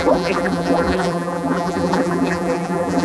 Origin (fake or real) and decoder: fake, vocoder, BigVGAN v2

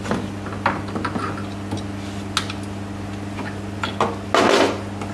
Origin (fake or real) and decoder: real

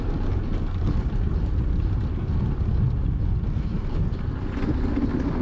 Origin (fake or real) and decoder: real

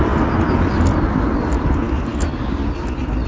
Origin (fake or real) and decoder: real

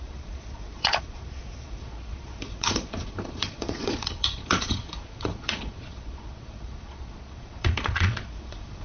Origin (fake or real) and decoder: fake, vocoder, Vocos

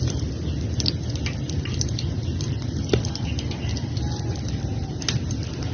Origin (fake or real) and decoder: real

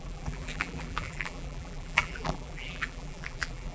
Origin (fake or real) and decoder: fake, vocoder, BigVGAN v2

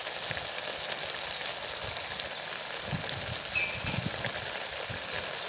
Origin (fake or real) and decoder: real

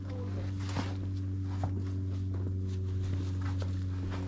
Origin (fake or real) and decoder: real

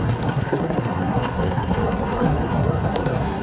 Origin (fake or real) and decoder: fake, codec, SNAC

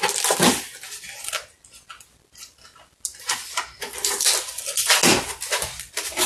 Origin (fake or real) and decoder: real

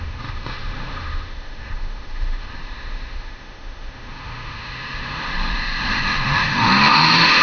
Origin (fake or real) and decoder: fake, autoencoder, DAC-VAE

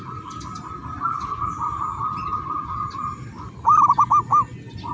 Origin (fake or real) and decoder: real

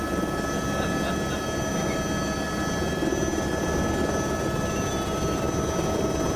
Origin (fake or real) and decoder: real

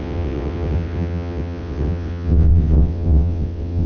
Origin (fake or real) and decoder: fake, vocoder, WaveNeXt